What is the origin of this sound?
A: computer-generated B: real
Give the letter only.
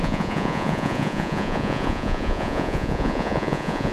A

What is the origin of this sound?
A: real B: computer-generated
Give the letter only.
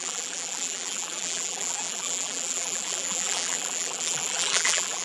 B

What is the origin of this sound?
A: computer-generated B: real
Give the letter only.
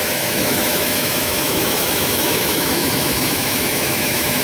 A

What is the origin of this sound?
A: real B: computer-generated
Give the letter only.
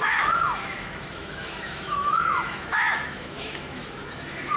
B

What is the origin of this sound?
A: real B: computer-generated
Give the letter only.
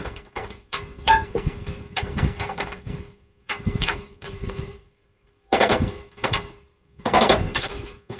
B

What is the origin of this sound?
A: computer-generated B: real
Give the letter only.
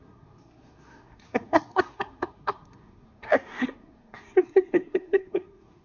A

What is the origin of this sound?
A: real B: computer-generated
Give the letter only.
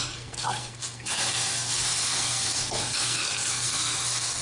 B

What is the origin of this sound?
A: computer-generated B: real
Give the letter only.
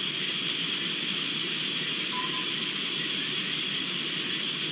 B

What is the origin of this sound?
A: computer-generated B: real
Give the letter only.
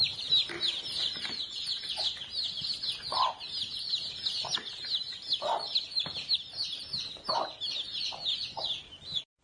B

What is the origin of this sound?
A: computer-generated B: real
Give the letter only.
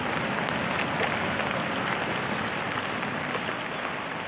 B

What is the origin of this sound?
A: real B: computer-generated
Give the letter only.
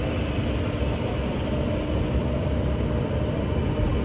A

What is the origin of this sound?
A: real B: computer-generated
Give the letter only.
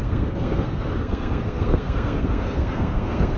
B